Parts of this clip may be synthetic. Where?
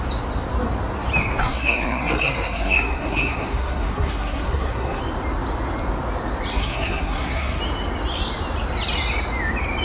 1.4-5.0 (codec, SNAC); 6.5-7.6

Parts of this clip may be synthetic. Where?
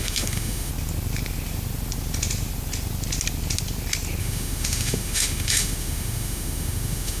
0.0-0.7 (autoencoder, DAC-VAE); 4.2-7.2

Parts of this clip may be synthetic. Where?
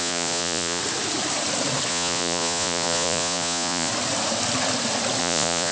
0.0-0.8 (vocoder, Vocos); 1.9-3.9; 5.2-5.7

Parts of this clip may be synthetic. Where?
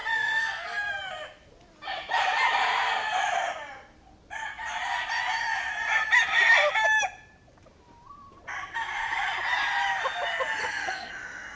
0.0-0.9 (codec, SNAC); 10.6-11.1